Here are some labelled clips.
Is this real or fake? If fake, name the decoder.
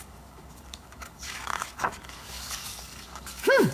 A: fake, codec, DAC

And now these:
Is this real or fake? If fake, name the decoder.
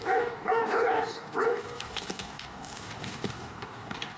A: fake, codec, DAC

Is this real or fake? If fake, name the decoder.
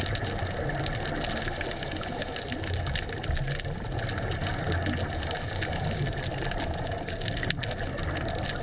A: real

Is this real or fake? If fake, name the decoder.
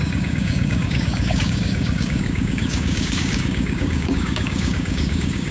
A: fake, codec, DAC